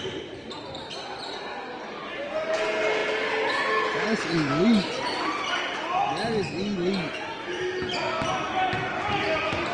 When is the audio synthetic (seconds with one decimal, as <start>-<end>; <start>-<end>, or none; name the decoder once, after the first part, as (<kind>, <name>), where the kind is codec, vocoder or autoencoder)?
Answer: none